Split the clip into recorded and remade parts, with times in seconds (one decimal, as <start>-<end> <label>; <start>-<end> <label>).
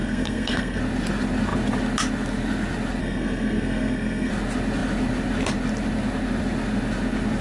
0.0-0.8 remade; 0.8-3.0 recorded; 3.0-4.3 remade; 4.3-7.4 recorded